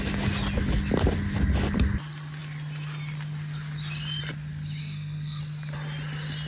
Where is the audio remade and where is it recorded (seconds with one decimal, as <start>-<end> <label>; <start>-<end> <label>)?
0.0-4.8 recorded; 4.8-5.4 remade; 5.4-6.5 recorded